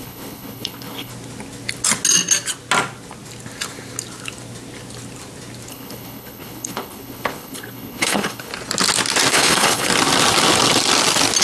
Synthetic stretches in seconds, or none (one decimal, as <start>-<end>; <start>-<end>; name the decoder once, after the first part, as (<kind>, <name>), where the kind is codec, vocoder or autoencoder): 0.0-1.1 (codec, HILCodec); 5.7-8.5; 9.3-9.9